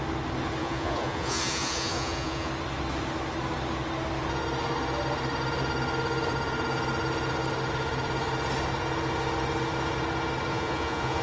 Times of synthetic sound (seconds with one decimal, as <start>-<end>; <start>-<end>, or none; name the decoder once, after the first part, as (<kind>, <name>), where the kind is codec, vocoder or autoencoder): 0.6-2.5 (vocoder, Vocos); 10.5-11.2